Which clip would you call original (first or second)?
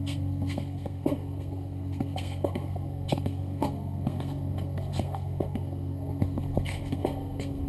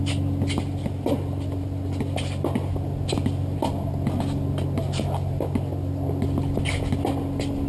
second